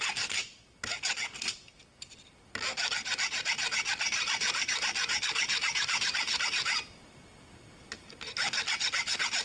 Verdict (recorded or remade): recorded